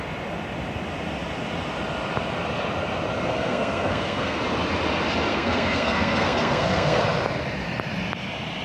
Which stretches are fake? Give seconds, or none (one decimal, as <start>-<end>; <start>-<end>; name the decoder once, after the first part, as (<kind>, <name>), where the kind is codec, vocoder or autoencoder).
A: 3.3-4.4 (codec, SNAC); 5.3-7.0